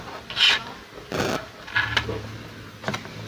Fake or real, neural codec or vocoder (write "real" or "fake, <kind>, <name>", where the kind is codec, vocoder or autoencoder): real